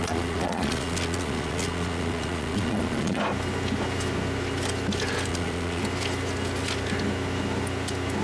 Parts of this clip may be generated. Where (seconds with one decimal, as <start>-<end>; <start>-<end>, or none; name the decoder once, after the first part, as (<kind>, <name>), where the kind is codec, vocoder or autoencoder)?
0.0-3.2 (vocoder, Vocos); 5.3-5.8